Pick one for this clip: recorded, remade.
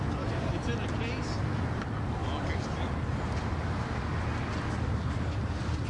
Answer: recorded